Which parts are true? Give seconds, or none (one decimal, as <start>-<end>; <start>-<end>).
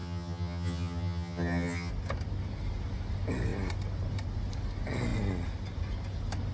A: 1.9-6.5